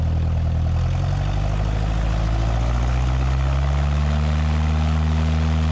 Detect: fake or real real